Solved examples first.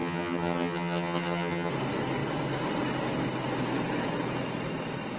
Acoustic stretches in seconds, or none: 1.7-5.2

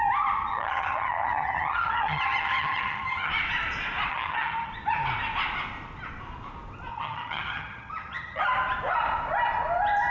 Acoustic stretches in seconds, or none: 0.0-0.5; 3.3-4.1; 4.7-6.9; 8.4-10.1